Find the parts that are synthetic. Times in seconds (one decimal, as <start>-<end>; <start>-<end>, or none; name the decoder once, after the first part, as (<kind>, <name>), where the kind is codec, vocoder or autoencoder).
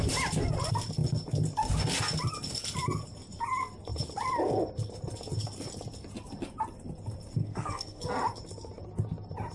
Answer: 7.4-8.0 (codec, SNAC)